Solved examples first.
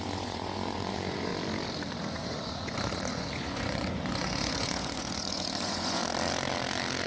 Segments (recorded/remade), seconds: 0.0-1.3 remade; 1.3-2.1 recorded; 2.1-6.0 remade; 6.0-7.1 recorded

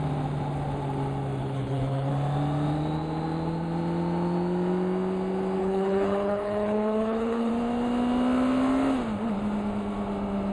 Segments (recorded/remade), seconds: 0.0-1.4 recorded; 1.4-2.1 remade; 2.1-5.6 recorded; 5.6-7.5 remade; 7.5-10.5 recorded

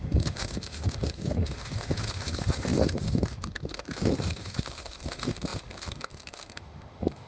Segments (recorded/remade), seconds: 0.0-7.3 remade

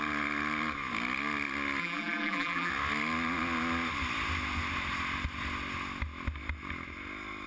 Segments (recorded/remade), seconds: 0.0-1.8 recorded; 1.8-2.7 remade; 2.7-7.5 recorded

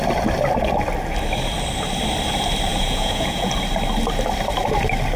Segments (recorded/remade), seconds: 0.0-2.7 recorded; 2.7-3.5 remade; 3.5-5.2 recorded

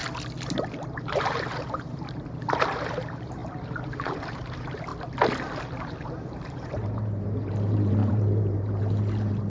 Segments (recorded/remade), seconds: 0.0-0.9 recorded; 0.9-4.9 remade; 4.9-5.8 recorded; 5.8-9.5 remade

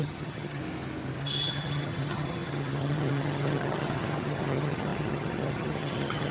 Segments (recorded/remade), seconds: 0.0-0.6 remade; 0.6-1.2 recorded; 1.2-6.3 remade

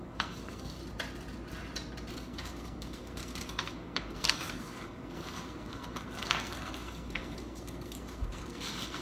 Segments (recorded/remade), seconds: 0.0-0.8 remade; 0.8-2.1 recorded; 2.1-9.0 remade